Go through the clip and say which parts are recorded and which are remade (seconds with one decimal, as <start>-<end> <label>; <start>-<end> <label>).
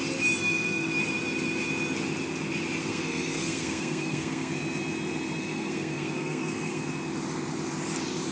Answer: 0.0-0.4 recorded; 0.4-0.9 remade; 0.9-2.8 recorded; 2.8-4.5 remade; 4.5-5.4 recorded; 5.4-6.9 remade; 6.9-8.3 recorded